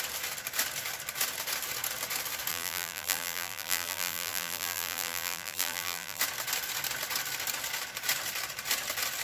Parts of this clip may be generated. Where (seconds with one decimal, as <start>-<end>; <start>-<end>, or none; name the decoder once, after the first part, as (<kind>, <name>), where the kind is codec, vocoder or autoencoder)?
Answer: 2.5-6.2 (vocoder, BigVGAN v2)